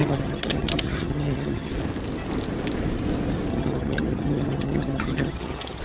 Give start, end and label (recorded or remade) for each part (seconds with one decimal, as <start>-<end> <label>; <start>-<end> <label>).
0.0-1.7 remade; 1.7-3.5 recorded; 3.5-5.8 remade